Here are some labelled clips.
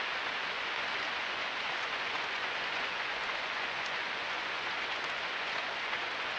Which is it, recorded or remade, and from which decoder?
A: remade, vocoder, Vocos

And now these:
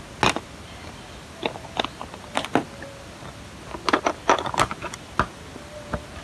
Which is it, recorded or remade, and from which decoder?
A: recorded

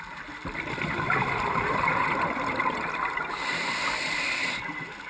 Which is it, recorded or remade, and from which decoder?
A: recorded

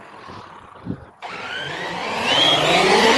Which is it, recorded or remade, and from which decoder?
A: recorded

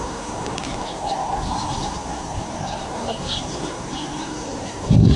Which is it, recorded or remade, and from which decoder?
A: remade, codec, SNAC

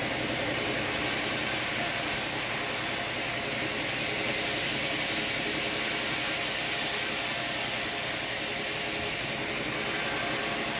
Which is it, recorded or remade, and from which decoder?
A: recorded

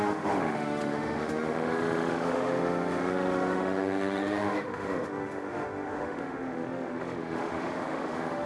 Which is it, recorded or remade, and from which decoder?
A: remade, autoencoder, DAC-VAE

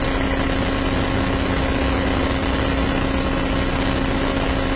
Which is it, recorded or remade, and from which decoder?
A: recorded